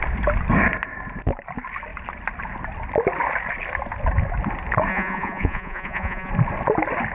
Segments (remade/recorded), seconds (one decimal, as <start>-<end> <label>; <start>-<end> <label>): 0.0-4.9 recorded; 4.9-6.3 remade; 6.3-7.1 recorded